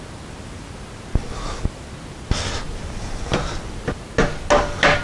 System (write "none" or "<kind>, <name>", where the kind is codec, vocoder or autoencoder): none